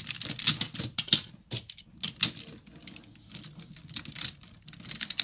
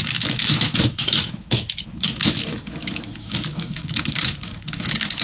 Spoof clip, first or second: second